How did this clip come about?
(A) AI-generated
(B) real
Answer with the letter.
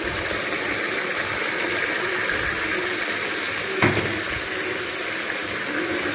B